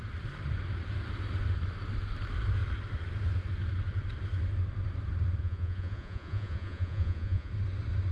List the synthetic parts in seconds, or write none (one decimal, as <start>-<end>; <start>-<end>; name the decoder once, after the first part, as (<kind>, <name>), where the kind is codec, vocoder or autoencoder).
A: 5.4-7.5 (vocoder, Vocos)